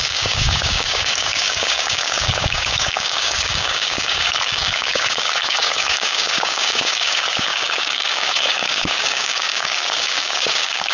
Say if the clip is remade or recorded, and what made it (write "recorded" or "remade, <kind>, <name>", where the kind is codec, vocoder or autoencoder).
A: remade, codec, DAC